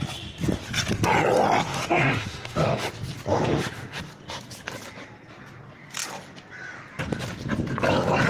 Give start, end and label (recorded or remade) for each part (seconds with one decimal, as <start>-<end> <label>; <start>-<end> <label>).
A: 0.0-1.7 recorded; 1.7-2.9 remade; 2.9-3.3 recorded; 3.3-4.0 remade; 4.0-8.3 recorded